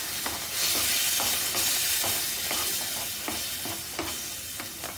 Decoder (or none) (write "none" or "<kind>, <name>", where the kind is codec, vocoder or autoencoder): none